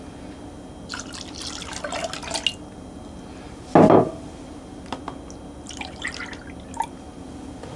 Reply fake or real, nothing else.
real